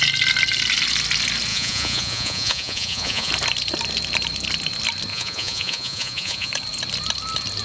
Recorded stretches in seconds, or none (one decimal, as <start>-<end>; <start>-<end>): 0.0-1.5; 3.3-5.1; 6.5-7.6